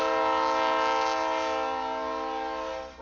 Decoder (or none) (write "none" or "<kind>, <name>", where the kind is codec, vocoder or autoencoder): none